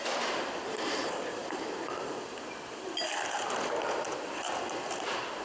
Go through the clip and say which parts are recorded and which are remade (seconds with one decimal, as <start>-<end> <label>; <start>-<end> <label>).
0.0-5.4 recorded